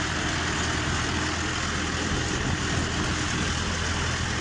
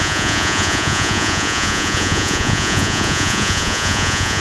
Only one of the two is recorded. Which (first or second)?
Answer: first